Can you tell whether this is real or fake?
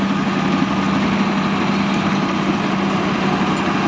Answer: real